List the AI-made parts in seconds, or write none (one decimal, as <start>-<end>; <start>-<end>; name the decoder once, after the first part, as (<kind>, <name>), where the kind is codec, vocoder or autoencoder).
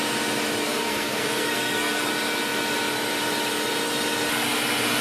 0.6-2.1 (codec, SNAC)